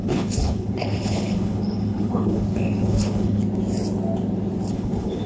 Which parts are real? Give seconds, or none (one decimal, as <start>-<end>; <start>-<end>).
3.4-4.7